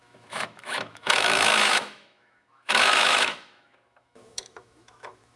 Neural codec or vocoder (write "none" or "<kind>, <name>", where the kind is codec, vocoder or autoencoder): autoencoder, DAC-VAE